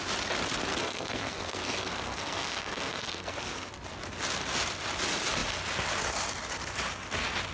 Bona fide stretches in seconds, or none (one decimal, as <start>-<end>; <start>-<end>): 0.0-0.7; 3.7-7.5